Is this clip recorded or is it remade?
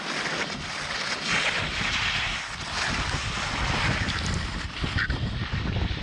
recorded